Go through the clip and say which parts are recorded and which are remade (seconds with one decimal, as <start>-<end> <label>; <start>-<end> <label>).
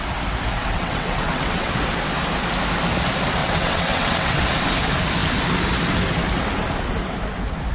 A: 0.0-0.6 recorded; 0.6-1.7 remade; 1.7-3.4 recorded; 3.4-4.4 remade; 4.4-7.7 recorded